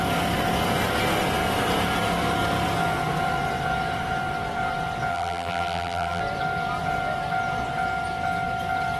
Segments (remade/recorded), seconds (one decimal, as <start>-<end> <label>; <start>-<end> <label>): 0.0-5.1 recorded; 5.1-6.2 remade; 6.2-9.0 recorded